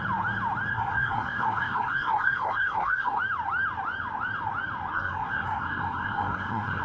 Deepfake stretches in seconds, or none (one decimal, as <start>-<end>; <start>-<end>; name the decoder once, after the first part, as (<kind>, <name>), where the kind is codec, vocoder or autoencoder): 0.7-3.2 (codec, SNAC); 4.9-6.8